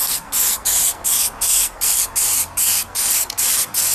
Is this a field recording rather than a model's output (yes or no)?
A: no